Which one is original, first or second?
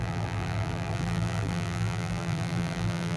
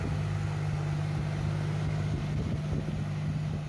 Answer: second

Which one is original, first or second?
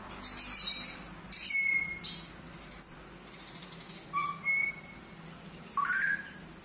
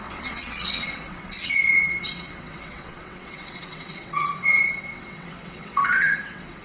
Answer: first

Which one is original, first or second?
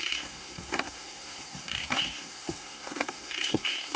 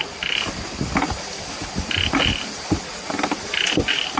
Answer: second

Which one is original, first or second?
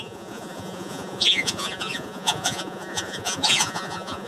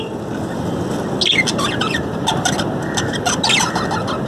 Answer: second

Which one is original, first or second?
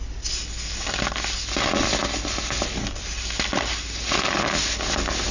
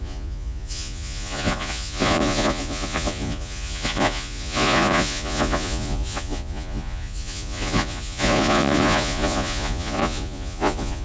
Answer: first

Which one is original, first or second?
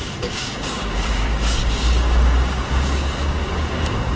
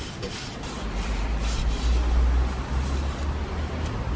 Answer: second